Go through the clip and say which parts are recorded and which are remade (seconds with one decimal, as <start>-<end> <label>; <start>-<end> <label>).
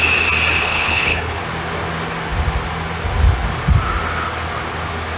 0.0-0.6 recorded; 0.6-1.4 remade; 1.4-5.2 recorded